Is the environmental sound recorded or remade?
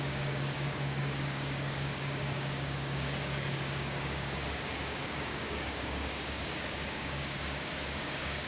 remade